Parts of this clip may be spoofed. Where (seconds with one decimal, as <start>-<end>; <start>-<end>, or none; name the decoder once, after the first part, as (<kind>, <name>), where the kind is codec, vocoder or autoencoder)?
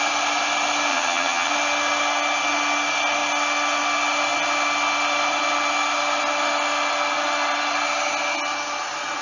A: 0.9-1.5 (vocoder, HiFi-GAN)